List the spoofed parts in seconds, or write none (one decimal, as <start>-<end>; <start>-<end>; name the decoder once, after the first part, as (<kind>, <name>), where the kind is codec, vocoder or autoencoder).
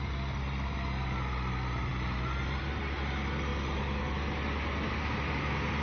0.0-3.5 (vocoder, BigVGAN v2)